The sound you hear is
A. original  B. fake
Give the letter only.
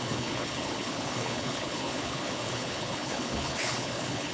B